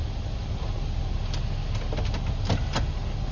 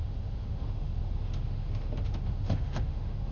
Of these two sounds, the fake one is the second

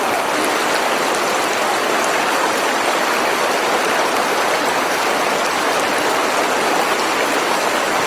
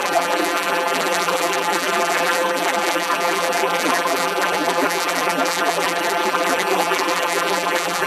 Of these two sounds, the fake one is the second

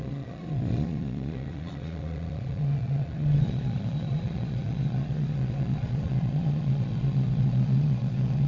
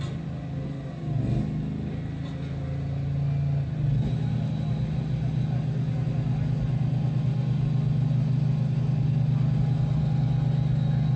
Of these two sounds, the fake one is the first